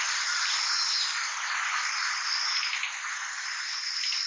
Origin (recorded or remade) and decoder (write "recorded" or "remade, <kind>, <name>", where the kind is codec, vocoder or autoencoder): recorded